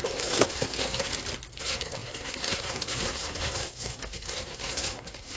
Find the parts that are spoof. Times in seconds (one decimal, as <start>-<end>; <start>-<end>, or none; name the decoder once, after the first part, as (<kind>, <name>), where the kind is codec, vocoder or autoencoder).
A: 0.0-1.1 (codec, SNAC); 1.6-5.4